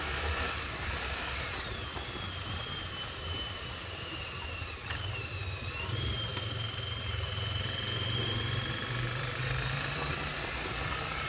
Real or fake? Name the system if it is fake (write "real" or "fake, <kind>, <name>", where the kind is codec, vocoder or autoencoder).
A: fake, vocoder, BigVGAN v2